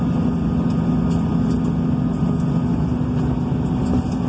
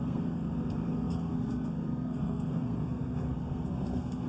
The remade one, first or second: second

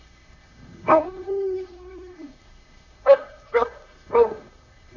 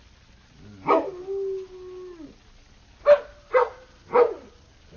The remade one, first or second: first